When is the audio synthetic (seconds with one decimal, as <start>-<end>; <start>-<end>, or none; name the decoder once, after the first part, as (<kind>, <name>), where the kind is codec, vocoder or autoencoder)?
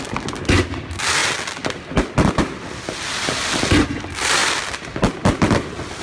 none